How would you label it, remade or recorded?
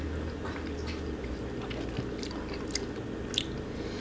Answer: recorded